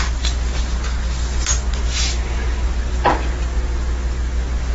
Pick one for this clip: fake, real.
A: real